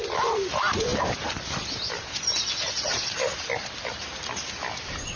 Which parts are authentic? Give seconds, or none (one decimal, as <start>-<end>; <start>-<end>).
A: 0.0-5.2